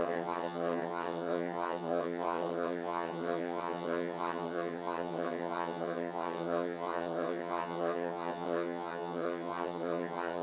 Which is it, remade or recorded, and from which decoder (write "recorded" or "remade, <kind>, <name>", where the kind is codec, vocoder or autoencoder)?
remade, vocoder, HiFi-GAN